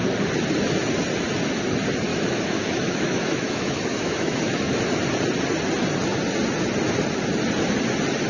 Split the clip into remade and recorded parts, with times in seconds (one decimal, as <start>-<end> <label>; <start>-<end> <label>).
0.0-2.1 recorded; 2.1-4.8 remade; 4.8-8.3 recorded

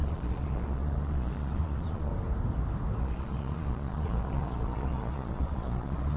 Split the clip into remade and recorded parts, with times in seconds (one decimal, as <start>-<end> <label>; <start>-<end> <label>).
0.0-2.1 remade; 2.1-3.0 recorded; 3.0-6.2 remade

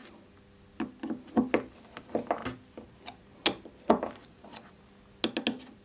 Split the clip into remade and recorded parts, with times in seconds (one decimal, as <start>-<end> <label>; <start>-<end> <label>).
0.0-4.2 recorded; 4.2-4.8 remade; 4.8-5.8 recorded